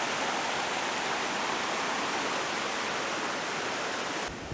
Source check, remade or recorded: recorded